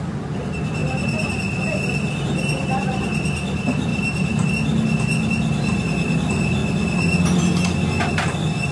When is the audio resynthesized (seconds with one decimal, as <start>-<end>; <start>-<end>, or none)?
0.8-1.3; 3.9-4.5